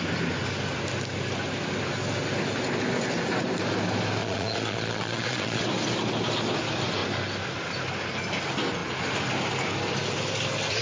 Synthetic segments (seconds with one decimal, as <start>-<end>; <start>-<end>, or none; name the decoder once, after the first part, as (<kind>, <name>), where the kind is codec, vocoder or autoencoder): 4.2-5.6 (vocoder, Vocos)